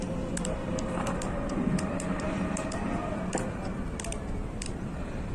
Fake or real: fake